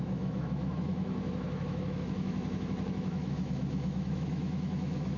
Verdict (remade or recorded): remade